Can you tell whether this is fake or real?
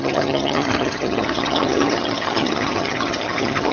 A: fake